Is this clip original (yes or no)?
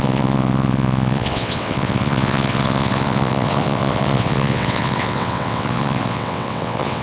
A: no